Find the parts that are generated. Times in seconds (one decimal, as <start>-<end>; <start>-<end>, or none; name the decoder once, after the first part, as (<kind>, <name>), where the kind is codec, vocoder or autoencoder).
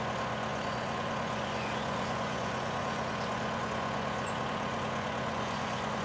0.0-6.0 (vocoder, Vocos)